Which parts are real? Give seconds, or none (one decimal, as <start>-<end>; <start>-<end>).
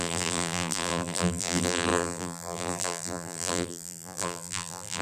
none